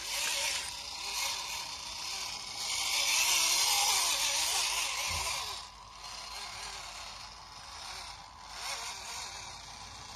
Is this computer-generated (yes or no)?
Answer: no